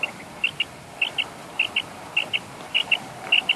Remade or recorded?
recorded